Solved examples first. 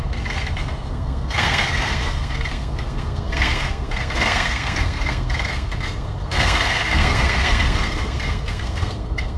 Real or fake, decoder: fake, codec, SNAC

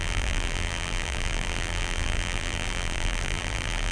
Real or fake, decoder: fake, vocoder, BigVGAN v2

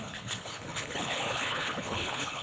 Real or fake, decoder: fake, codec, HILCodec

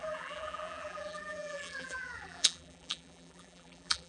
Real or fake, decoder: fake, vocoder, BigVGAN v2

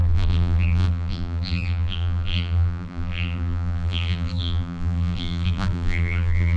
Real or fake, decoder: fake, vocoder, BigVGAN v2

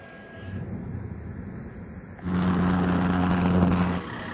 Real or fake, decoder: real